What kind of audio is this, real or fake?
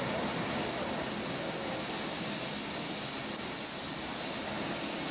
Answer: real